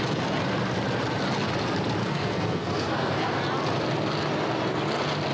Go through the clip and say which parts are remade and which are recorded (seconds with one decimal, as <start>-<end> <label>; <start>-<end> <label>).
0.0-2.0 recorded; 2.0-3.4 remade; 3.4-5.3 recorded

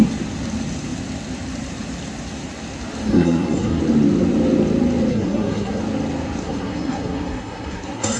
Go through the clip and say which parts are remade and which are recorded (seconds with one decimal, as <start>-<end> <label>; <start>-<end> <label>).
0.0-3.0 recorded; 3.0-3.8 remade; 3.8-5.1 recorded; 5.1-5.8 remade; 5.8-6.4 recorded; 6.4-8.2 remade